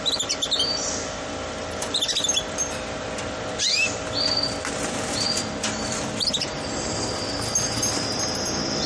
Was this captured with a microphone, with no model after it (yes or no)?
yes